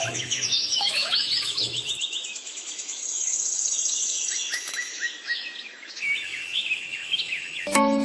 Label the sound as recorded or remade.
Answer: remade